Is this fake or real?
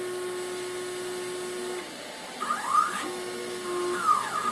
real